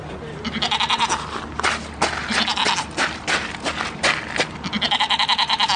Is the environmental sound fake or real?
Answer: real